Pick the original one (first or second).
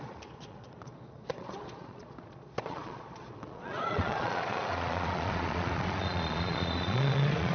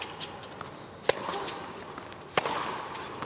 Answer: second